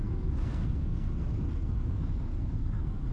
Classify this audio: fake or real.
fake